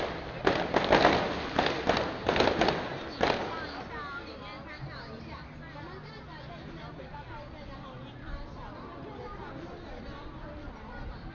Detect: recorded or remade recorded